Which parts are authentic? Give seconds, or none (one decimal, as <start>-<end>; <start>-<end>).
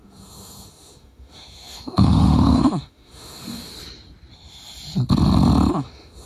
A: 3.7-5.7